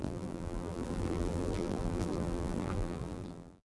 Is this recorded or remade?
remade